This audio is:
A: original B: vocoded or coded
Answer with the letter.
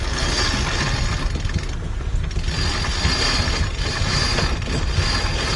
A